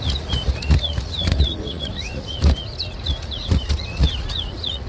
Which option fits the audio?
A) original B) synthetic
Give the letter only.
B